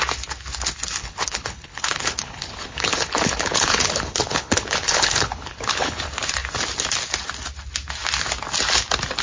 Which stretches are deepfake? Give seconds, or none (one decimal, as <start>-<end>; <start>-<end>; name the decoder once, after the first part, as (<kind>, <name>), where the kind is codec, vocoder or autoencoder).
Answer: 1.0-6.0 (codec, HILCodec)